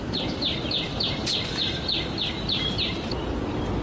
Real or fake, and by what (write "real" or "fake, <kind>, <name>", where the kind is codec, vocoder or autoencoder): fake, vocoder, BigVGAN v2